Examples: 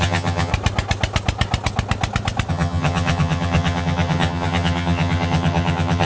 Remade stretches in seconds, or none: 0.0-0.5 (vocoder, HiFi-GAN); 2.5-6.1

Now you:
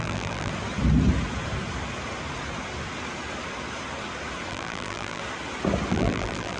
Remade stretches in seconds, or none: 0.0-0.5 (vocoder, BigVGAN v2); 4.5-5.2; 5.9-6.6